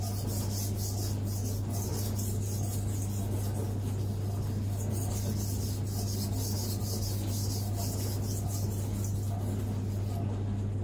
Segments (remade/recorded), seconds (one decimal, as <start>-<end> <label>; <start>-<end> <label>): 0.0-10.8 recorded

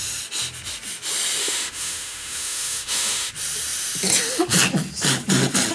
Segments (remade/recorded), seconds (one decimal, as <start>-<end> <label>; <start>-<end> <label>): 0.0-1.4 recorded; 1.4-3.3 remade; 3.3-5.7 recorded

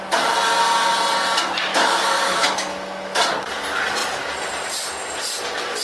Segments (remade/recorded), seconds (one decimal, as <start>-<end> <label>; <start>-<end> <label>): 0.0-1.7 recorded; 1.7-3.2 remade; 3.2-5.8 recorded